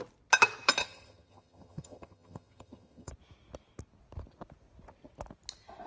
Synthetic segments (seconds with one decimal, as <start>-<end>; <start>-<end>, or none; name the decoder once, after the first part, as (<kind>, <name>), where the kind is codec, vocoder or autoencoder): 0.8-3.1 (vocoder, HiFi-GAN)